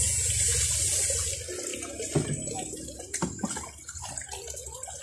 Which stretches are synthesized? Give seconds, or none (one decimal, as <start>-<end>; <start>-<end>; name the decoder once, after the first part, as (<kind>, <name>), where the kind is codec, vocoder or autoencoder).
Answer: none